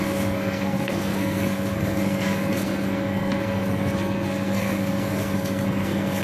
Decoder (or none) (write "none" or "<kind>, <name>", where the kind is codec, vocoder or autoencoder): codec, SNAC